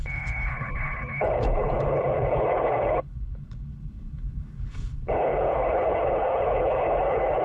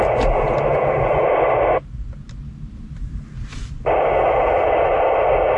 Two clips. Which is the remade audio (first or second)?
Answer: first